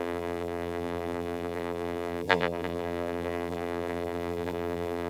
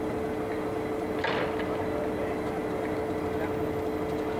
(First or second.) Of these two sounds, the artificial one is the first